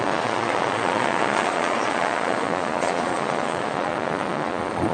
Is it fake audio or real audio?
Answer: fake